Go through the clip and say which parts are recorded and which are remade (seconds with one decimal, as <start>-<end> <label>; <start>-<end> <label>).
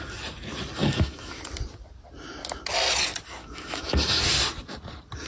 0.0-0.8 recorded; 0.8-1.4 remade; 1.4-3.4 recorded; 3.4-4.2 remade; 4.2-5.3 recorded